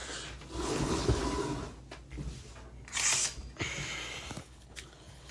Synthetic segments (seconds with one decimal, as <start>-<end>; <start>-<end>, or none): 0.6-1.2; 4.4-5.3